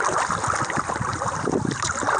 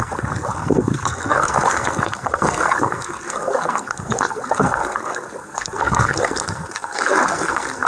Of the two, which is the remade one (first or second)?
second